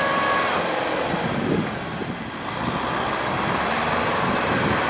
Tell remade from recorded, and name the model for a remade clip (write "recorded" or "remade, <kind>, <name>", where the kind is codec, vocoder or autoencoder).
recorded